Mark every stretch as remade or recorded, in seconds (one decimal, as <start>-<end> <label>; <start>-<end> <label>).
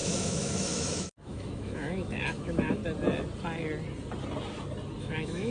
0.0-2.8 remade; 2.8-5.0 recorded; 5.0-5.5 remade